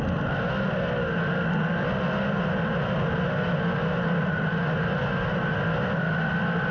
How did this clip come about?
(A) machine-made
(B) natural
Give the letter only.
B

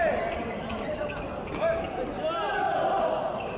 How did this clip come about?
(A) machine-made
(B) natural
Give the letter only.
B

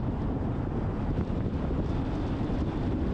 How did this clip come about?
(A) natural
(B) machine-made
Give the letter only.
A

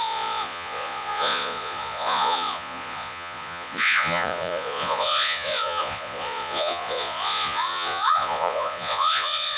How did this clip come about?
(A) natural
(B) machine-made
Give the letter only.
B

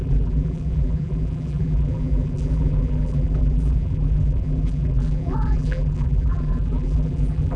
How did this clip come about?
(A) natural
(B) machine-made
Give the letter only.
B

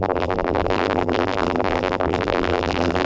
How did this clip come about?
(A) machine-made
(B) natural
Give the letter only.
A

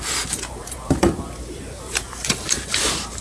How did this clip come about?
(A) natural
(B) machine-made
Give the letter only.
B